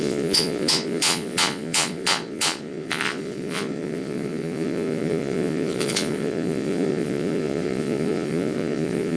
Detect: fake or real fake